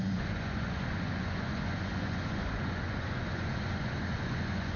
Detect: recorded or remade remade